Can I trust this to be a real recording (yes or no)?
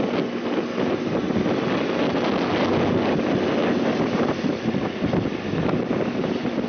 yes